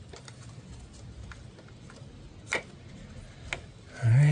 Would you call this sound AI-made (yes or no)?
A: no